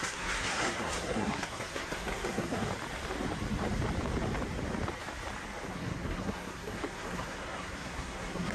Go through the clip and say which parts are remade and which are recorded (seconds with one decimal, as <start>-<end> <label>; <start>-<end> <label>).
0.0-2.7 remade; 2.7-5.7 recorded; 5.7-8.5 remade

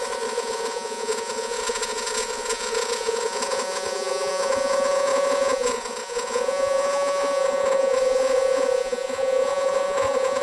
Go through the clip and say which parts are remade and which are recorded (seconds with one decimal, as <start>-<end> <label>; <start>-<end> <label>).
0.0-10.4 remade

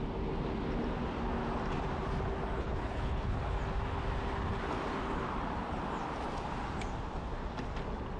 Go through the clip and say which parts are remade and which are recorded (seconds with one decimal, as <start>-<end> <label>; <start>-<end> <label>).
0.0-2.6 recorded; 2.6-3.4 remade; 3.4-8.2 recorded

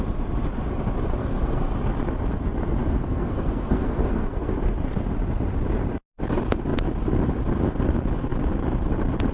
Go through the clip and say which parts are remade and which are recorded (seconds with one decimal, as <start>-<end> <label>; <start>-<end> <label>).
0.0-1.2 recorded; 1.2-1.7 remade; 1.7-2.8 recorded; 2.8-4.5 remade; 4.5-9.3 recorded

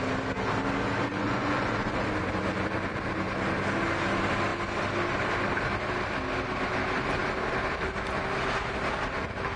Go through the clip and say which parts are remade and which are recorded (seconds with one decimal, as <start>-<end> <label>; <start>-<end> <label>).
0.0-1.1 recorded; 1.1-2.1 remade; 2.1-9.6 recorded

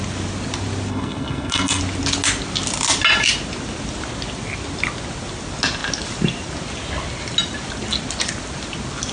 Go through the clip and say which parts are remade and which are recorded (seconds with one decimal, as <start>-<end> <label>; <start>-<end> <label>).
0.0-0.9 recorded; 0.9-1.8 remade; 1.8-9.1 recorded